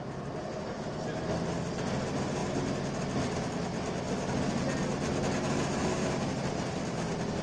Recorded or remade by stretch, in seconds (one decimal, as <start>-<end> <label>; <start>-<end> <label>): 0.0-7.4 recorded